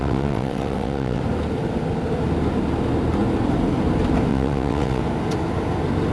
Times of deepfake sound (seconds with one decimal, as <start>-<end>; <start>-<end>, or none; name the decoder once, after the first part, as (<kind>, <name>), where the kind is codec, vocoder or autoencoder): 0.0-1.2 (vocoder, WaveNeXt); 4.3-5.0